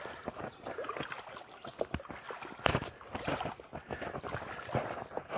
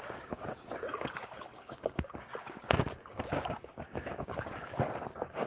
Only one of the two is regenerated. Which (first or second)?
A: second